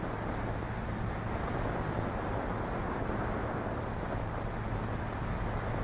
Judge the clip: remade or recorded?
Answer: recorded